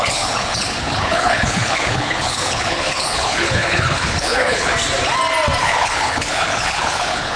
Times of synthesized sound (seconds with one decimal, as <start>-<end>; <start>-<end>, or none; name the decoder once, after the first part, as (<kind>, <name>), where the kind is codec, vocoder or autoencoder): 0.0-4.7 (codec, HILCodec); 5.6-7.4